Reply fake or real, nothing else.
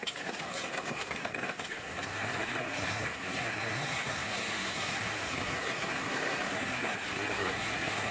fake